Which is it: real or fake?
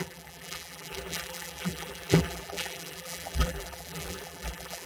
fake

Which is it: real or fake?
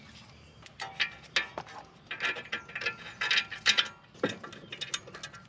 real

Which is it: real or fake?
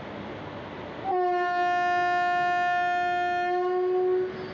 real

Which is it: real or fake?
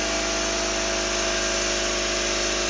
real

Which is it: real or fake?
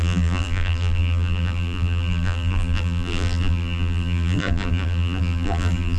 fake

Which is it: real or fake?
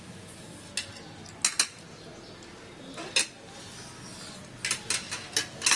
real